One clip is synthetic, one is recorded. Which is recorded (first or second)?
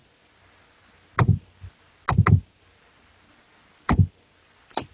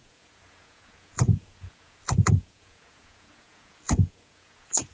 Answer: first